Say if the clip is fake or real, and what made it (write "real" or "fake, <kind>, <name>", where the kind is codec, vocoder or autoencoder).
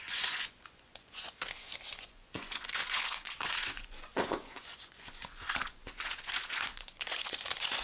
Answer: fake, vocoder, Vocos